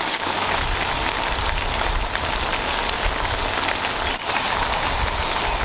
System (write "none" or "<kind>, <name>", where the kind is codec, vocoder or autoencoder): none